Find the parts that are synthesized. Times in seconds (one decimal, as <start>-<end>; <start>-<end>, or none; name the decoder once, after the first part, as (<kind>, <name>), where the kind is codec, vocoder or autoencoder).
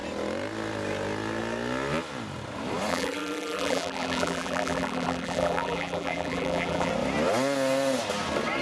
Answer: 2.9-6.9 (vocoder, BigVGAN v2)